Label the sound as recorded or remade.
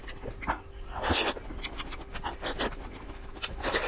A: recorded